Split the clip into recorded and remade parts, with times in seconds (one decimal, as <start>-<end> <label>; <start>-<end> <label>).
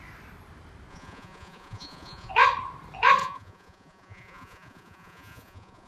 0.0-0.9 recorded; 0.9-2.3 remade; 2.3-3.2 recorded; 3.2-5.9 remade